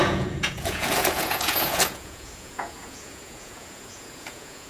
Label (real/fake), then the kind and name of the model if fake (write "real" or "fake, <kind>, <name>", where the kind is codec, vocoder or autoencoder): fake, vocoder, Vocos